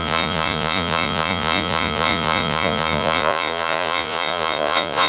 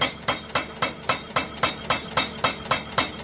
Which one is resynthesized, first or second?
first